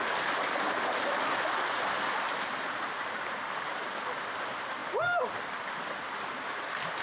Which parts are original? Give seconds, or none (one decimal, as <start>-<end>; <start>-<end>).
0.0-7.0